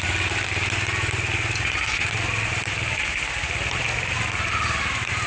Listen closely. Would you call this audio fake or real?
real